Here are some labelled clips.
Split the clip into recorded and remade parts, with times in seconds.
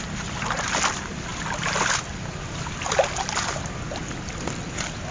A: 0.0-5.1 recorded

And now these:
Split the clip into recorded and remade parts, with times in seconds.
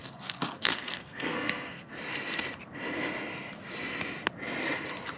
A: 0.0-1.9 remade; 1.9-5.2 recorded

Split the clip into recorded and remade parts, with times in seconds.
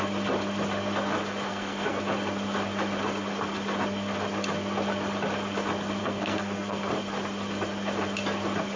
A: 0.0-1.5 recorded; 1.5-2.0 remade; 2.0-6.0 recorded; 6.0-6.9 remade; 6.9-8.8 recorded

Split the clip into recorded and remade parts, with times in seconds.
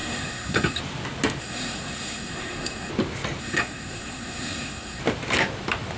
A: 0.0-0.8 remade; 0.8-1.4 recorded; 1.4-2.9 remade; 2.9-3.4 recorded; 3.4-5.0 remade; 5.0-6.0 recorded